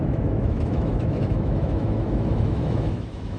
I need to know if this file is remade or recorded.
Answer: remade